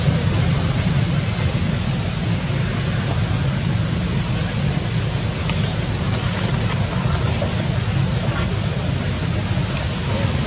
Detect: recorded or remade recorded